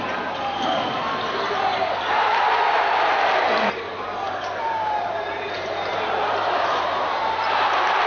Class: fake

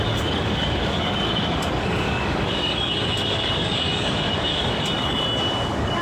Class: fake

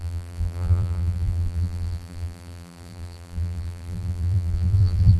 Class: fake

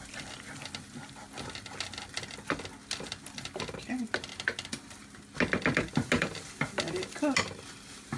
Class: real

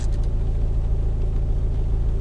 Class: real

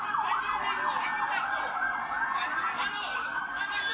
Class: real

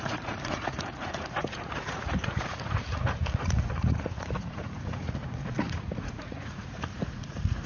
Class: fake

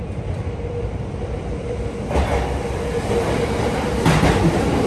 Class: fake